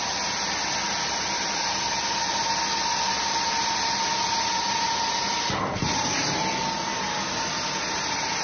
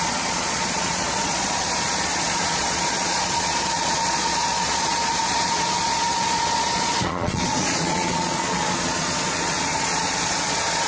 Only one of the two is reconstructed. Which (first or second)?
second